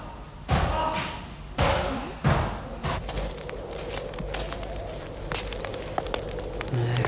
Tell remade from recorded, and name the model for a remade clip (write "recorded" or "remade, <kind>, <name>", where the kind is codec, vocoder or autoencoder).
recorded